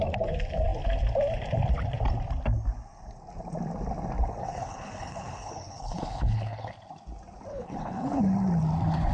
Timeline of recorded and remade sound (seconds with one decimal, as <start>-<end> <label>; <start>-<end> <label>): 0.0-4.4 recorded; 4.4-6.7 remade; 6.7-7.5 recorded; 7.5-8.2 remade; 8.2-9.1 recorded